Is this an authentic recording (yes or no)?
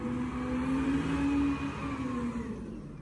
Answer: yes